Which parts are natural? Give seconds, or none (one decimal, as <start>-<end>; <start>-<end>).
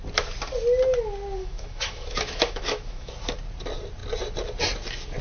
0.0-1.4; 3.1-5.2